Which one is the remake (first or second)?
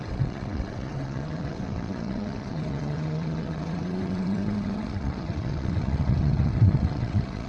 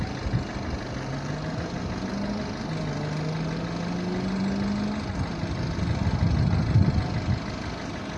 first